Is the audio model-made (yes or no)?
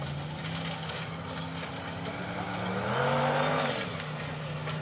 no